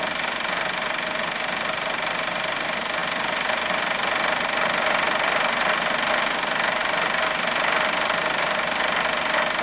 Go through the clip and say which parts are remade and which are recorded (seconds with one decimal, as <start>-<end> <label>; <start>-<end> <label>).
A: 0.0-9.6 recorded